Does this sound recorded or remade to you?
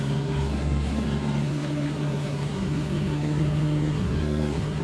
remade